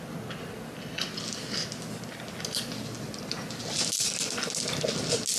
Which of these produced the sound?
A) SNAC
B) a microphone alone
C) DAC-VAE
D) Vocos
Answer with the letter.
B